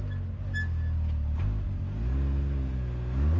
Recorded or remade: recorded